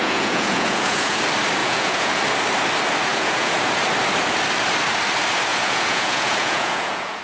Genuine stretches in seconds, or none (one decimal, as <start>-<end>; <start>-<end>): 1.2-1.6; 2.2-3.1; 3.7-5.5